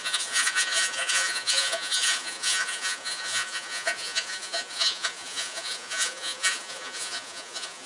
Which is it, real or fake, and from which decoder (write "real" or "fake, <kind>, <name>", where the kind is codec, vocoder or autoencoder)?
fake, vocoder, Vocos